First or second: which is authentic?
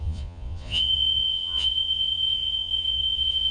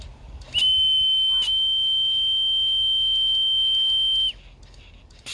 second